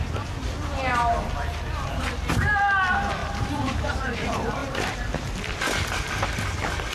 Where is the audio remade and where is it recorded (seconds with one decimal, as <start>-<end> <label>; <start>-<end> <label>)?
0.0-3.2 recorded; 3.2-3.9 remade; 3.9-4.6 recorded; 4.6-5.6 remade; 5.6-6.9 recorded